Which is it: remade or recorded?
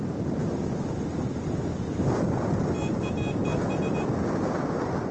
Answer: recorded